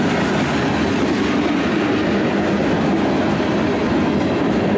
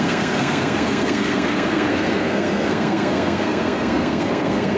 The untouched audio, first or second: first